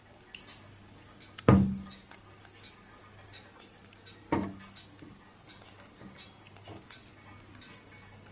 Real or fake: real